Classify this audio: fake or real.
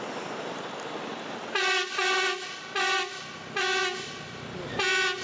real